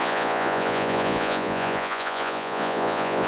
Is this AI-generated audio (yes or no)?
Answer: yes